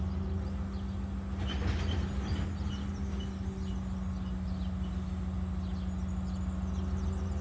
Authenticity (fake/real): real